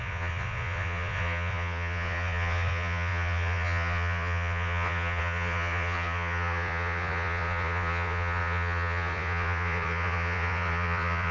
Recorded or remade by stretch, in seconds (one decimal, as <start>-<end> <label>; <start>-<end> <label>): 0.0-11.3 remade